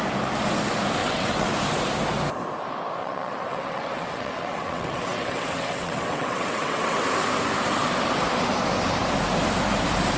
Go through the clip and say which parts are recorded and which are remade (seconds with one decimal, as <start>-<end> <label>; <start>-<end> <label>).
0.0-1.0 recorded; 1.0-1.5 remade; 1.5-3.0 recorded; 3.0-7.0 remade; 7.0-10.2 recorded